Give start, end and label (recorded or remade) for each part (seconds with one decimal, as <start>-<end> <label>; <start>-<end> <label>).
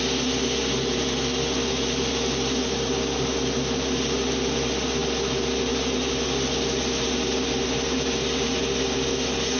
0.0-9.6 recorded